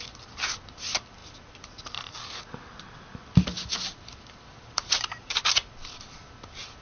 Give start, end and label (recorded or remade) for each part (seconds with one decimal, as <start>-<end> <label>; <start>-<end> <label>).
0.0-4.5 recorded; 4.5-5.4 remade; 5.4-6.8 recorded

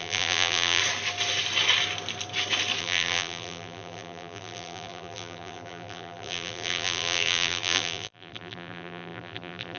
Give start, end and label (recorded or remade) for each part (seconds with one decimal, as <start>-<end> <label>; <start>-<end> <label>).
0.0-0.8 remade; 0.8-2.8 recorded; 2.8-9.8 remade